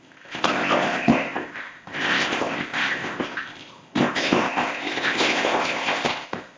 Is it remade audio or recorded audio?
remade